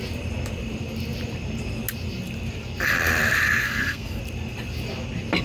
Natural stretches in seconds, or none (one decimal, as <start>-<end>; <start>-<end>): 0.0-3.6; 4.2-5.4